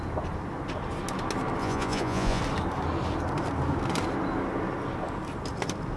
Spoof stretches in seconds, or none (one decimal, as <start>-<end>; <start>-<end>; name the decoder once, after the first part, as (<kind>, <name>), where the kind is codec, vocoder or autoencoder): 1.6-2.4 (vocoder, Vocos)